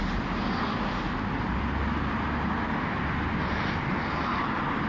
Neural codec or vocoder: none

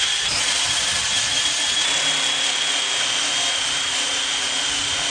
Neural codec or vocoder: none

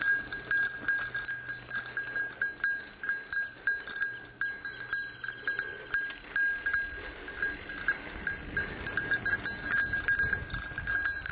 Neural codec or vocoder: none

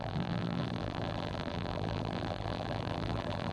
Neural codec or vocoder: vocoder, BigVGAN v2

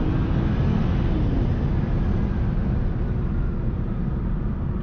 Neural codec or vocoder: none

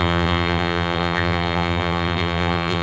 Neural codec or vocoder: vocoder, BigVGAN v2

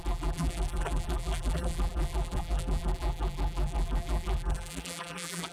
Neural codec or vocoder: vocoder, BigVGAN v2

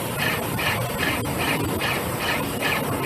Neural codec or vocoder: none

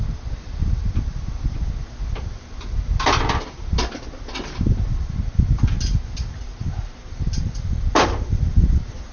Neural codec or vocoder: none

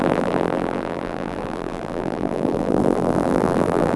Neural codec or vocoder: vocoder, BigVGAN v2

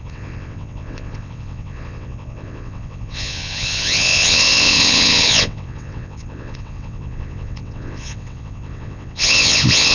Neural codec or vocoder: vocoder, WaveNeXt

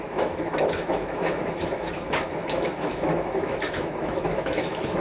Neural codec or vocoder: autoencoder, DAC-VAE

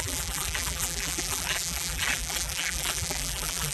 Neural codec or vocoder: vocoder, BigVGAN v2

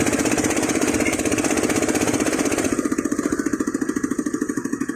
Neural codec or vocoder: vocoder, BigVGAN v2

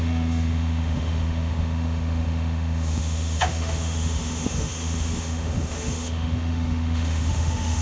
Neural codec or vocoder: autoencoder, DAC-VAE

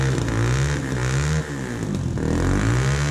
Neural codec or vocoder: none